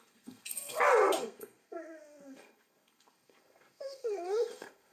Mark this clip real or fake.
fake